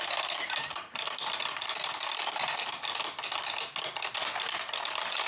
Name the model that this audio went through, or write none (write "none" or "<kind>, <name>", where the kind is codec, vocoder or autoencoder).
none